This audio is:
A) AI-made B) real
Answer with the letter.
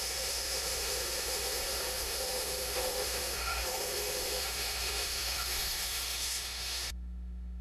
A